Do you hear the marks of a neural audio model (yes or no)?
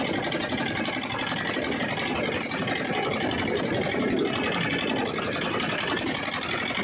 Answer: no